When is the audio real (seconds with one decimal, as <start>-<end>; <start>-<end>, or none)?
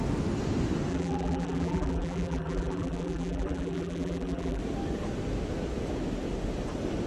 0.0-0.9; 4.6-7.1